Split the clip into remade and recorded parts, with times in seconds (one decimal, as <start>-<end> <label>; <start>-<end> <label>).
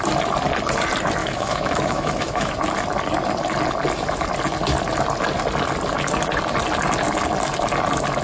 0.0-1.2 recorded; 1.2-2.5 remade; 2.5-8.2 recorded